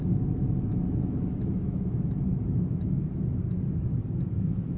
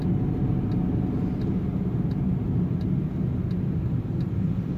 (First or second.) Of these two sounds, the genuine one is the second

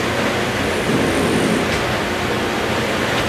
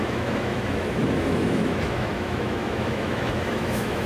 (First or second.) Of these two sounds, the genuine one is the first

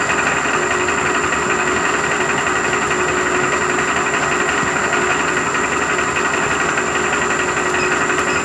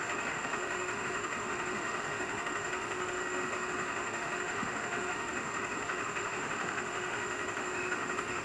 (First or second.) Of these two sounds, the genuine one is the first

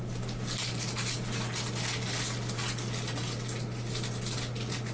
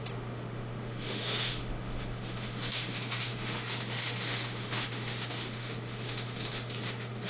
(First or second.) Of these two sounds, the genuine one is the first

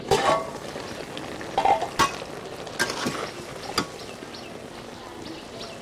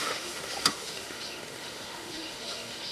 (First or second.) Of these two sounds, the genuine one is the first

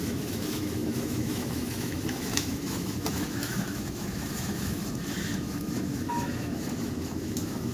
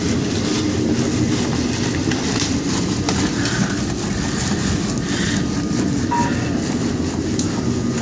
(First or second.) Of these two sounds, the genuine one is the second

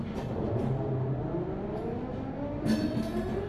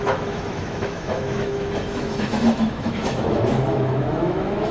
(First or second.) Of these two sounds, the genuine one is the first